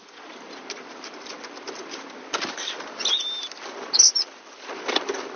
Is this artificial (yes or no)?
no